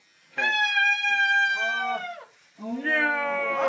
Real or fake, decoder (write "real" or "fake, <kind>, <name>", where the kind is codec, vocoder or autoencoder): real